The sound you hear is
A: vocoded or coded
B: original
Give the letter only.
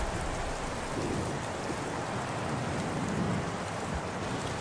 A